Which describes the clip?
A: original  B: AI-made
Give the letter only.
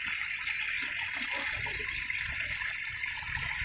A